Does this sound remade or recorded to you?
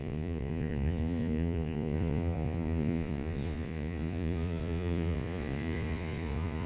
remade